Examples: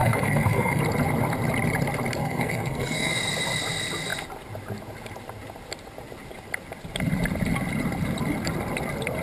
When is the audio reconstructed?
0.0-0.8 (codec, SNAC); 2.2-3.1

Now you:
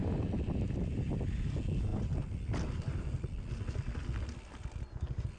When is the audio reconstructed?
0.0-1.5 (vocoder, BigVGAN v2)